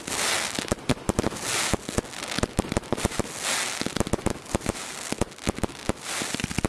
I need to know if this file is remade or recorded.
recorded